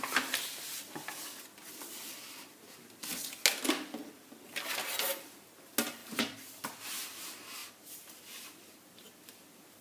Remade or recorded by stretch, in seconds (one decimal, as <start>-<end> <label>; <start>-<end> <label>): 0.0-6.0 recorded; 6.0-6.8 remade; 6.8-7.6 recorded; 7.6-8.2 remade; 8.2-9.8 recorded